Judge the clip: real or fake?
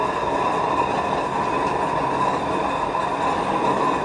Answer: real